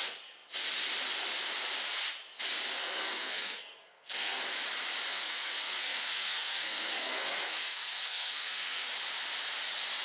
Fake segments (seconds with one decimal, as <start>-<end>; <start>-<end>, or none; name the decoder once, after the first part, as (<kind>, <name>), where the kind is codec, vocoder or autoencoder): 2.8-4.4 (codec, SNAC); 5.1-8.9